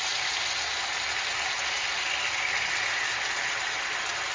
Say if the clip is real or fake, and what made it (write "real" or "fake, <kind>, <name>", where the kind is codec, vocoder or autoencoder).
real